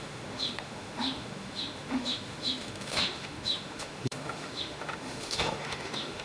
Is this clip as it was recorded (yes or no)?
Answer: no